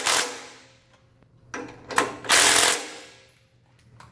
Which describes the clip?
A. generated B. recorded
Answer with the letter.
B